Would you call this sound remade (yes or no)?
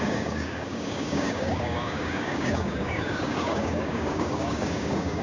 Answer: yes